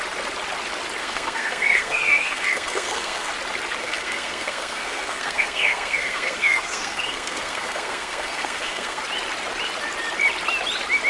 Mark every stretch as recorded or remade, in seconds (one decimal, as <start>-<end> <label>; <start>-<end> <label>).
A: 0.0-1.0 recorded; 1.0-3.3 remade; 3.3-3.8 recorded; 3.8-9.0 remade; 9.0-11.1 recorded